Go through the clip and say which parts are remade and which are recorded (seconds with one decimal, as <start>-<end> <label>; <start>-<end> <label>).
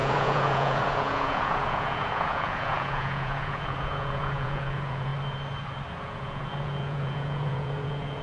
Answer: 0.0-5.1 remade; 5.1-6.0 recorded; 6.0-8.2 remade